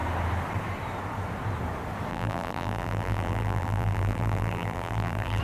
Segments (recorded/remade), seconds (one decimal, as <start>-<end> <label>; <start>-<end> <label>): 0.0-2.1 recorded; 2.1-5.4 remade